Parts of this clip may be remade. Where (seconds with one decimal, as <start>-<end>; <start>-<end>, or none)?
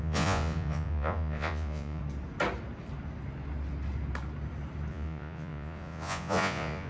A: 0.0-2.0; 4.9-6.9